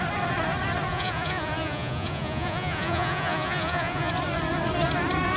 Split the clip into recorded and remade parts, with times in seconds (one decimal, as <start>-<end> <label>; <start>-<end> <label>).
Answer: 0.0-0.9 recorded; 0.9-4.1 remade; 4.1-5.4 recorded